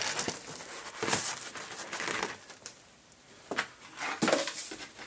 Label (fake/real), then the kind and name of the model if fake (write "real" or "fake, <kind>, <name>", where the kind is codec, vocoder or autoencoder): real